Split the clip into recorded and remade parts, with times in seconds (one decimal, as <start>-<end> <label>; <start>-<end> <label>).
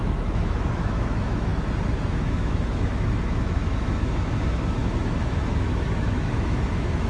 0.0-1.5 remade; 1.5-2.1 recorded; 2.1-7.1 remade